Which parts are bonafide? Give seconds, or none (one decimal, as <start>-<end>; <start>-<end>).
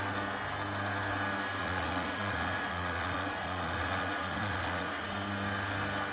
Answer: 0.0-1.6; 5.1-6.1